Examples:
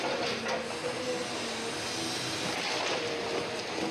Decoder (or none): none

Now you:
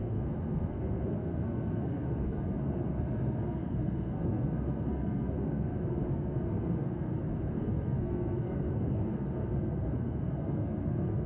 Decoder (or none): codec, SNAC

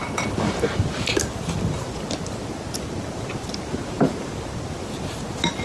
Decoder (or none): none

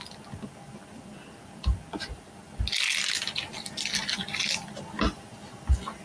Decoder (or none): none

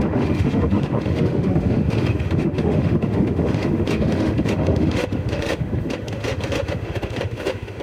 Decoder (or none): autoencoder, DAC-VAE